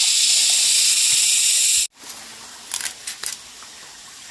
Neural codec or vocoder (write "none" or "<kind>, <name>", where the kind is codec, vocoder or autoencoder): none